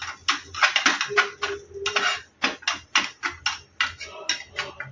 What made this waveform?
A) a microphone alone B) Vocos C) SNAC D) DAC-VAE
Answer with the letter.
A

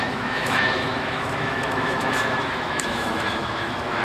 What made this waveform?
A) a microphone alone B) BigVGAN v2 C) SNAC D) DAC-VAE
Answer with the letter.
D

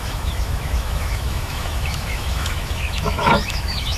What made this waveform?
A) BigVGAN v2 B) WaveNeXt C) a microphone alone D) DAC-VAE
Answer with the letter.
D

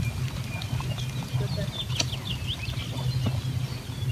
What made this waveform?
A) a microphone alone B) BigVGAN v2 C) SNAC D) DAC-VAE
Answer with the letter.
A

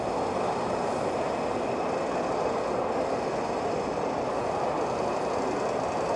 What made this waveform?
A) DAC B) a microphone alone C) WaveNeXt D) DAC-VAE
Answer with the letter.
B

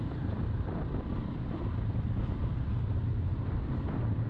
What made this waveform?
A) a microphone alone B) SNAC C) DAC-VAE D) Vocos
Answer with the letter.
A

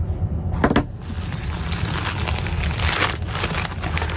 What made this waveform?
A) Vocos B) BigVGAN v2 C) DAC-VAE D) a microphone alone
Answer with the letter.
D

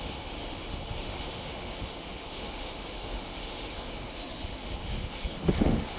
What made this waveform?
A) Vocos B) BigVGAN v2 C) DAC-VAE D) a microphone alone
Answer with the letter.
C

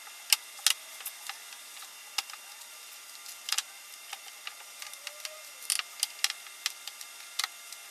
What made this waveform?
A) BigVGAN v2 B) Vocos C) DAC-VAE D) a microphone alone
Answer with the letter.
D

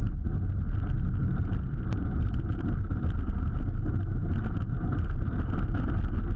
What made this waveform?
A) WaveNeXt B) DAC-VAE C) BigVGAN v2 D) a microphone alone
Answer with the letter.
D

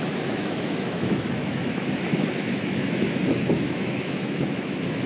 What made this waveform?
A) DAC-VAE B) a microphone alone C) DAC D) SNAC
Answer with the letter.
A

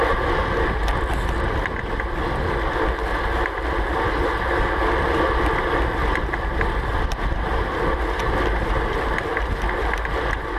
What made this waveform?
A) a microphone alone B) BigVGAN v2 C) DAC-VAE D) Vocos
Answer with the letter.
A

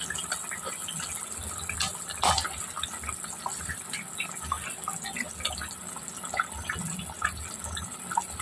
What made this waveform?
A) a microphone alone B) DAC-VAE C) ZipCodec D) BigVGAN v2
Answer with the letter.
A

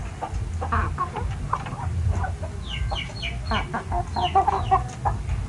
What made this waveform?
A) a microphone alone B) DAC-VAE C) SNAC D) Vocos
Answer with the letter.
A